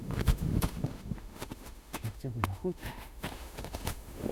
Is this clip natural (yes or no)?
no